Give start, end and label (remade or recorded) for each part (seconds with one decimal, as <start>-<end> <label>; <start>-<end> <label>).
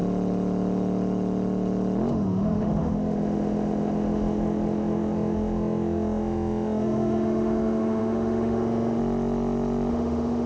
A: 0.0-2.1 recorded; 2.1-9.0 remade; 9.0-9.9 recorded; 9.9-10.5 remade